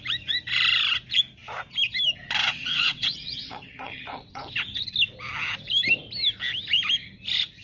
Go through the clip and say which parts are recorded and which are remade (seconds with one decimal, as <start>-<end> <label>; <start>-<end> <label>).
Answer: 0.0-2.4 recorded; 2.4-4.5 remade; 4.5-7.6 recorded